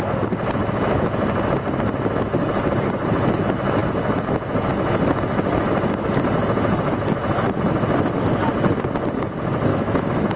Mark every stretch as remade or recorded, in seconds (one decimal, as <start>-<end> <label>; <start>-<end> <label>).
0.0-9.7 recorded; 9.7-10.4 remade